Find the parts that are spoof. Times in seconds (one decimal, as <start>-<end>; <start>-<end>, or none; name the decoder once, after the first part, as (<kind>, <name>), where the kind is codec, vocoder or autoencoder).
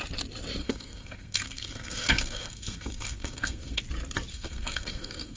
0.6-3.8 (codec, SNAC); 4.3-5.4